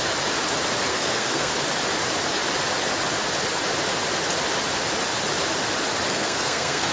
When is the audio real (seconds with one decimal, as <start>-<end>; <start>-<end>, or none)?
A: 0.0-0.9; 1.5-6.1